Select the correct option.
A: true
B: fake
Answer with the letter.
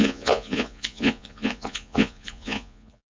B